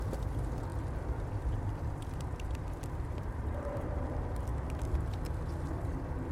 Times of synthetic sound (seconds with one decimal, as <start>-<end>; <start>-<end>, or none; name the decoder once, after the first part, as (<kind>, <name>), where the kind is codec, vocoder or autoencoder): 0.0-4.5 (vocoder, BigVGAN v2); 5.7-6.3